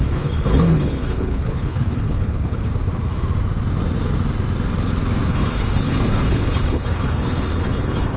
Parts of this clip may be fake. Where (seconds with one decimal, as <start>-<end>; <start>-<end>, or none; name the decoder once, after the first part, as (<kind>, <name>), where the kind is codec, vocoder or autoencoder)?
0.0-2.7 (codec, HILCodec); 5.3-8.2